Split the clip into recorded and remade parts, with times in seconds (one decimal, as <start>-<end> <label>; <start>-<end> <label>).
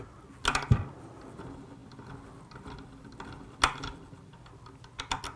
0.0-5.4 recorded